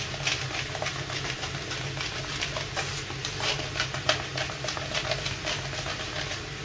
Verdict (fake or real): real